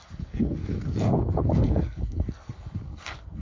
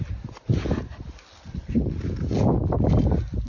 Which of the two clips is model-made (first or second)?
first